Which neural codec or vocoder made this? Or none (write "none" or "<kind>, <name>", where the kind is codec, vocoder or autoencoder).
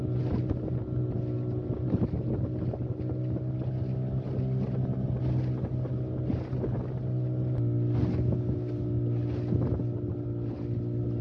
none